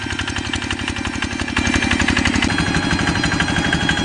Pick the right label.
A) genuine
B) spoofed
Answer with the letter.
A